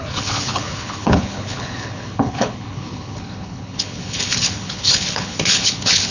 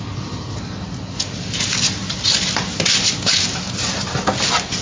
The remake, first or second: first